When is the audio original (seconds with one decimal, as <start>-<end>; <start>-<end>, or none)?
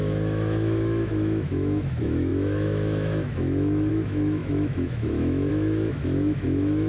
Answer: none